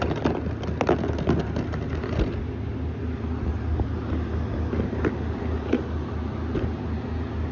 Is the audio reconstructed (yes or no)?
no